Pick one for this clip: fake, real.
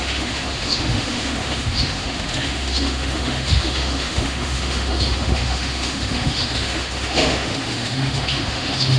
fake